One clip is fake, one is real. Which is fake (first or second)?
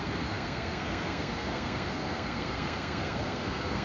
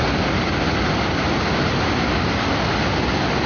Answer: first